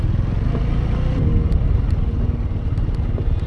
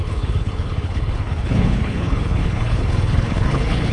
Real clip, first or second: first